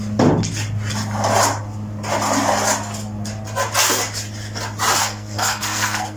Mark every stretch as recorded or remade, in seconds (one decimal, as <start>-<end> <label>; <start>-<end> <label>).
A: 0.0-5.0 recorded; 5.0-6.2 remade

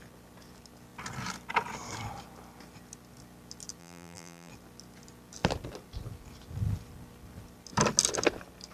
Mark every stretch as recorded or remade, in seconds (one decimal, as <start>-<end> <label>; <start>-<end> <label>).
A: 0.0-3.8 recorded; 3.8-4.5 remade; 4.5-8.7 recorded